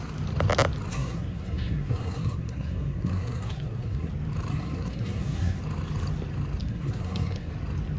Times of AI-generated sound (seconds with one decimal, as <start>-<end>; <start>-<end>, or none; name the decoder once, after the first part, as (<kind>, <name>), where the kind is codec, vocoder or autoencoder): 0.9-4.1 (codec, SNAC); 4.5-5.6; 6.6-7.5